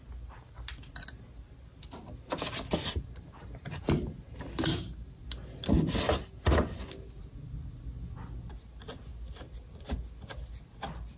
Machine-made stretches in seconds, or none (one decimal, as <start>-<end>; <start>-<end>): none